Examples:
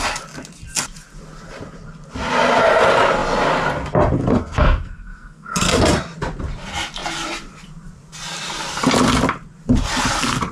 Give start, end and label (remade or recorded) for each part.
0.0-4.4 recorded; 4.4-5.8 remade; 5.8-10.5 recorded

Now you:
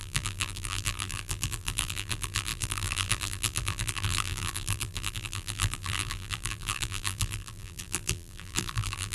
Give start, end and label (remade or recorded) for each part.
0.0-9.1 remade

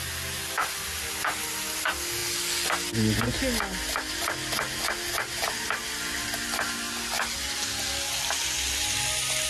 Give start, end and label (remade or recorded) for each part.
0.0-9.5 recorded

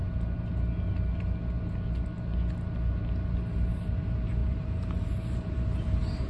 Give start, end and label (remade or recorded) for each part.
0.0-3.5 recorded; 3.5-6.3 remade

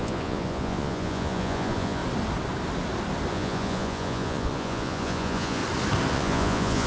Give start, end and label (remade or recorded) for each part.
0.0-2.0 remade; 2.0-3.3 recorded; 3.3-5.6 remade; 5.6-6.1 recorded; 6.1-6.9 remade

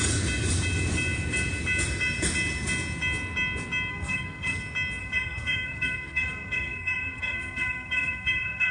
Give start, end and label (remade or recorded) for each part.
0.0-3.9 recorded; 3.9-4.6 remade; 4.6-5.0 recorded; 5.0-8.7 remade

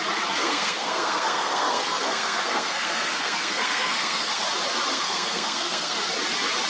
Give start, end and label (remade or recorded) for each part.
0.0-0.4 recorded; 0.4-4.4 remade; 4.4-4.9 recorded; 4.9-6.0 remade; 6.0-6.7 recorded

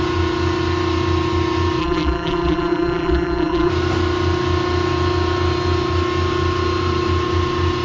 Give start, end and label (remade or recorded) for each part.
0.0-1.8 recorded; 1.8-3.7 remade; 3.7-7.8 recorded